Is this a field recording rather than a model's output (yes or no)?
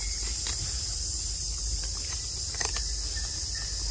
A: yes